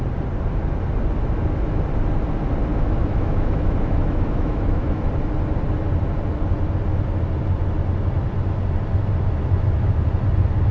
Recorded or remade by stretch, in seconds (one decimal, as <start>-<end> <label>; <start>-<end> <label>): 0.0-2.7 recorded; 2.7-5.1 remade; 5.1-10.7 recorded